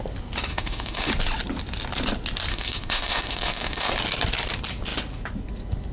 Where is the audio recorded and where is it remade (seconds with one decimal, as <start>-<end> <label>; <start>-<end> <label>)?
0.0-0.5 recorded; 0.5-1.1 remade; 1.1-2.5 recorded; 2.5-3.9 remade; 3.9-5.9 recorded